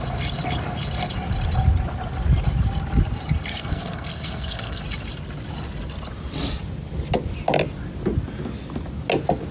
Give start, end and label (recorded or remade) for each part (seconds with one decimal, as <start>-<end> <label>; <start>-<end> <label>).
0.0-3.5 recorded; 3.5-4.8 remade; 4.8-9.5 recorded